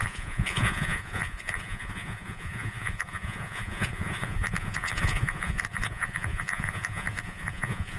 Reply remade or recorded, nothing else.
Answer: remade